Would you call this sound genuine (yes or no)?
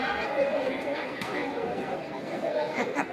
no